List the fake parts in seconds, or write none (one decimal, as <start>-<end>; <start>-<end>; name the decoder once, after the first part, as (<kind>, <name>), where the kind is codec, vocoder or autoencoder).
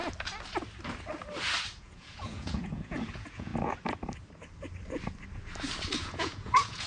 1.8-3.5 (vocoder, Vocos); 6.0-6.9